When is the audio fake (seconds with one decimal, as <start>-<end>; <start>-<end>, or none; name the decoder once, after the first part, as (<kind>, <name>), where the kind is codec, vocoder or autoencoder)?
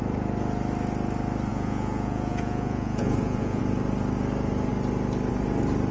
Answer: 1.5-3.6 (vocoder, Vocos)